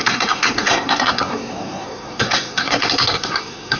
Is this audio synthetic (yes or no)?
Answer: yes